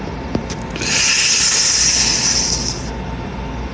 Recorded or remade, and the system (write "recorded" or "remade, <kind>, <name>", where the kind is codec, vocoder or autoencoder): recorded